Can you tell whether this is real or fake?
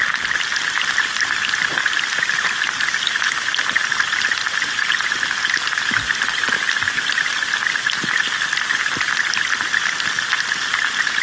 real